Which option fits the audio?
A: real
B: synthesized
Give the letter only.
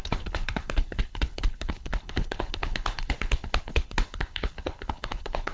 B